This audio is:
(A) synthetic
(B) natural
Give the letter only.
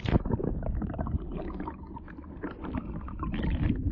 B